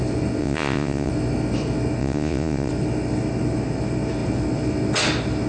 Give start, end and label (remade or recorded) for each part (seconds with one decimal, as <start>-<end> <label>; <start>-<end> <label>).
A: 0.0-0.4 recorded; 0.4-1.1 remade; 1.1-2.0 recorded; 2.0-2.7 remade; 2.7-5.5 recorded